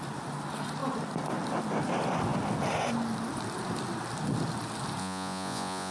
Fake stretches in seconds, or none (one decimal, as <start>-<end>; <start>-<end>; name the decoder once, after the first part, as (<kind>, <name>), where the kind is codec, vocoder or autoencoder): 5.0-5.9 (vocoder, Vocos)